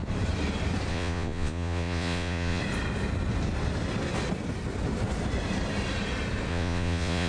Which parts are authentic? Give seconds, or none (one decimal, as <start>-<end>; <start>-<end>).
0.0-0.9; 2.6-6.5